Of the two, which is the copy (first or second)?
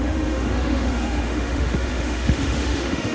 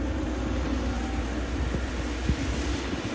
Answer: first